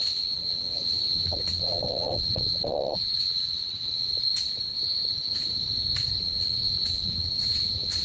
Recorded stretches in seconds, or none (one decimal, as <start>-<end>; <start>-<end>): 4.1-6.2